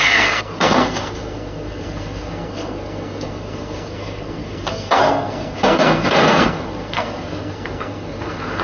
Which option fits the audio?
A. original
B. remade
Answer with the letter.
B